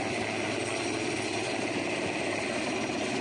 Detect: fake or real real